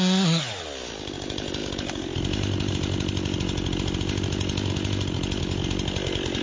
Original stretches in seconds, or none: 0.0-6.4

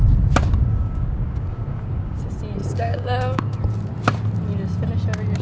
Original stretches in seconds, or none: 0.0-0.6; 2.2-2.6; 3.4-5.4

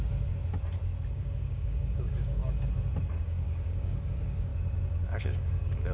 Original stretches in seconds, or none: 0.0-1.1; 2.4-3.2; 4.5-5.2

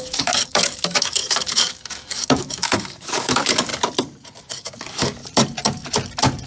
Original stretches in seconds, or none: 3.7-4.4; 5.2-6.5